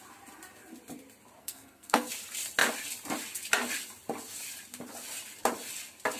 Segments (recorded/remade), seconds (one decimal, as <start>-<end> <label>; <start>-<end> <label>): 0.0-1.4 recorded; 1.4-2.1 remade; 2.1-6.2 recorded